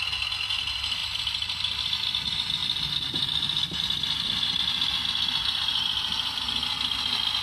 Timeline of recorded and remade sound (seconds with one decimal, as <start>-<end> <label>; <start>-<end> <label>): 0.0-1.0 recorded; 1.0-2.2 remade; 2.2-2.6 recorded; 2.6-4.6 remade; 4.6-7.4 recorded